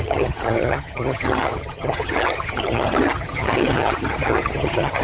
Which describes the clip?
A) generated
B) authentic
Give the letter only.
A